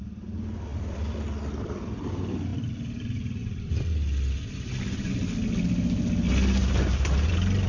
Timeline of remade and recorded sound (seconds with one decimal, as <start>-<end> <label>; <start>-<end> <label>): 0.0-0.7 recorded; 0.7-2.1 remade; 2.1-2.5 recorded; 2.5-5.1 remade; 5.1-6.6 recorded; 6.6-7.3 remade; 7.3-7.7 recorded